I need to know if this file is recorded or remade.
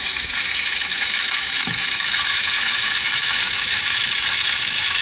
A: remade